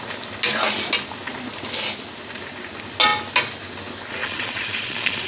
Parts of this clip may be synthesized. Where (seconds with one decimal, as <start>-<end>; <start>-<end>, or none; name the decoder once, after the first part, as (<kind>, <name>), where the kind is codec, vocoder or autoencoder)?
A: 4.2-5.3 (vocoder, Vocos)